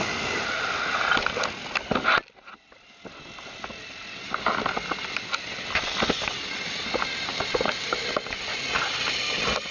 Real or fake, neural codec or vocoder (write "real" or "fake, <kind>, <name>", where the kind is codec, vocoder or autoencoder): real